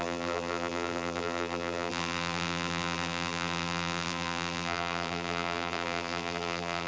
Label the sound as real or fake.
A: fake